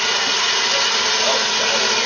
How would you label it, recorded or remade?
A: recorded